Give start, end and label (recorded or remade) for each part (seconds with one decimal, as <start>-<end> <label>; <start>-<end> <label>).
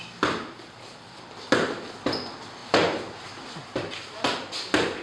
0.0-5.0 recorded